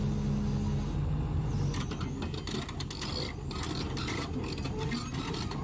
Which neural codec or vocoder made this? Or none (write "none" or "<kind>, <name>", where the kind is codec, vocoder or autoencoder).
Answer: none